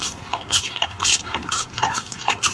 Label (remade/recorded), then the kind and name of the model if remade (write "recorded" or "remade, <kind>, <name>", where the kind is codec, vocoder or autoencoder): remade, codec, SNAC